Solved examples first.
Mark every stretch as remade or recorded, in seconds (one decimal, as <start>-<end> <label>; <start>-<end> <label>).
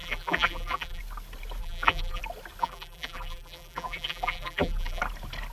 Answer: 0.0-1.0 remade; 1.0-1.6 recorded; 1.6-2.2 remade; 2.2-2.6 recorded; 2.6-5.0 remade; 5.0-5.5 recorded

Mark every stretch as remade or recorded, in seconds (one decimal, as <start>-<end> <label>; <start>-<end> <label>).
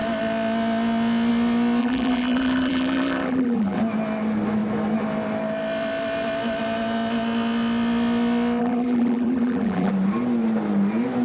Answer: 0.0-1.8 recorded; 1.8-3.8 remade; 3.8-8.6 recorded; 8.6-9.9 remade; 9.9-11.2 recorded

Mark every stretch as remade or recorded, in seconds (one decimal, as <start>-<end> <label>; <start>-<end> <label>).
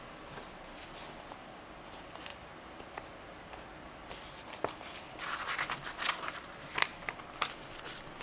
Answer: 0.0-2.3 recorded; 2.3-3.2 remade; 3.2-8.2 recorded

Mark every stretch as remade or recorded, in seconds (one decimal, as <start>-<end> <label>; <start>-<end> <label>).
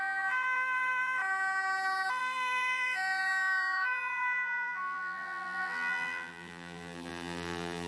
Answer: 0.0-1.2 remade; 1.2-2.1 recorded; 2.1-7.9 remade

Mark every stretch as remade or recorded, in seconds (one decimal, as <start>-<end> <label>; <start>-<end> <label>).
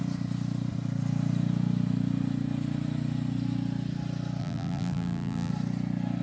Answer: 0.0-4.4 recorded; 4.4-5.5 remade; 5.5-6.2 recorded